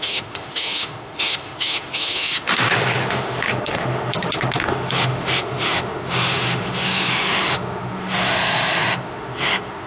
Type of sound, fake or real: fake